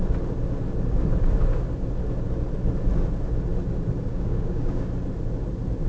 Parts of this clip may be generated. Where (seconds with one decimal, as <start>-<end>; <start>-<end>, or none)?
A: 4.1-4.9